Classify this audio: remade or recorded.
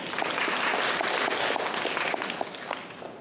recorded